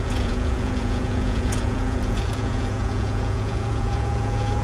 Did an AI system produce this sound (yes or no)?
yes